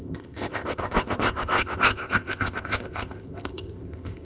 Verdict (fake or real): fake